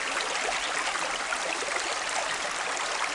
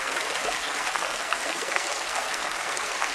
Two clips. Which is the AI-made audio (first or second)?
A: second